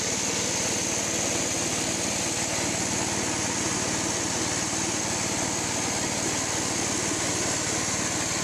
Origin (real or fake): real